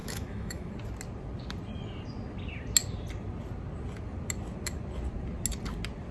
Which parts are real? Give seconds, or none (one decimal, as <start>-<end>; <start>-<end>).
0.7-6.1

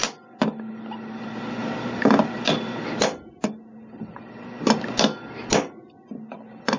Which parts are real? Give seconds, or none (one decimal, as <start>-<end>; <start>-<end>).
0.0-6.8

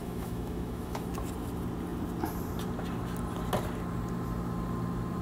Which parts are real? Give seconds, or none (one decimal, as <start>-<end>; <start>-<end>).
1.1-5.2